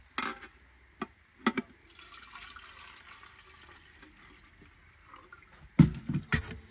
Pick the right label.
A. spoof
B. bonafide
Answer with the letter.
B